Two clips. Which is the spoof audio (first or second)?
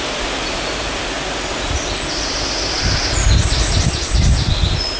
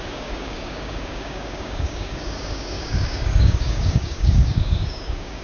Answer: second